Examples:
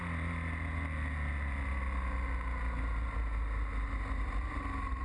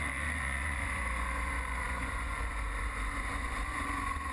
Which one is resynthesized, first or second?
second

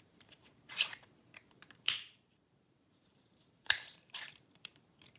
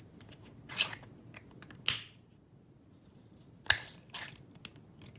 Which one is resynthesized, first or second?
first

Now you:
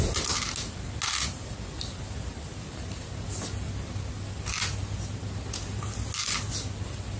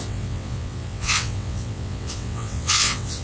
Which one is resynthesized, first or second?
second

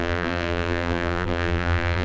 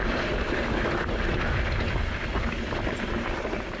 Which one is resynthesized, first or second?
first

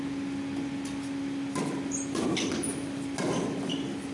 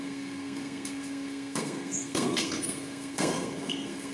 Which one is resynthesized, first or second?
second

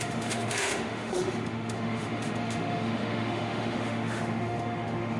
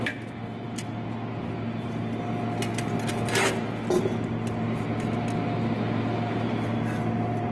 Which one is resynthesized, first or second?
first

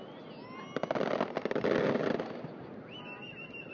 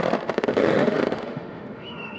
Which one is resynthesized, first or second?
second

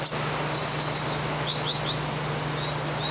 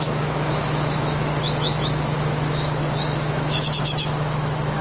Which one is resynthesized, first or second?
second